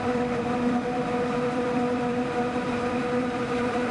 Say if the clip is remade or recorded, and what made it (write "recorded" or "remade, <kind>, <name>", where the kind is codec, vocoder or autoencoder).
remade, vocoder, BigVGAN v2